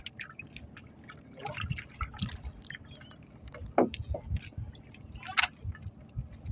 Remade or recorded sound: recorded